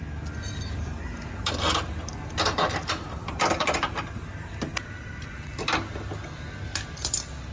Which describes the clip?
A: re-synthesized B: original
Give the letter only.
B